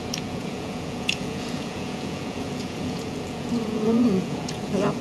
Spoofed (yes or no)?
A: yes